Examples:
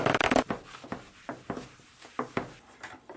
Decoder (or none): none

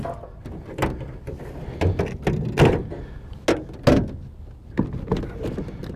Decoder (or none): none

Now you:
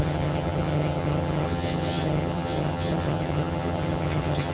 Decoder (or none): vocoder, HiFi-GAN